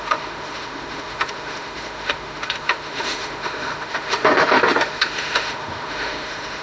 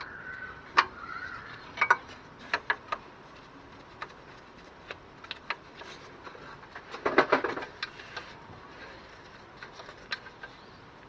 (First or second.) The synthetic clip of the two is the first